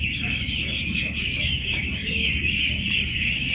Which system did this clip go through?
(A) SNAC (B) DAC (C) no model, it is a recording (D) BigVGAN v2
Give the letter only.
B